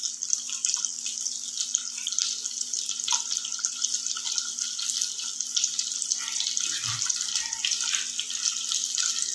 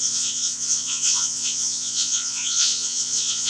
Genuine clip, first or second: first